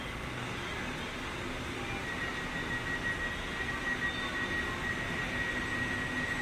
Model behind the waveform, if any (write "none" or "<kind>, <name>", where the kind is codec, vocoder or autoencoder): none